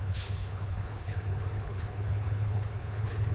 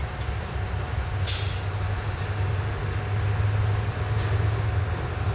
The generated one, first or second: first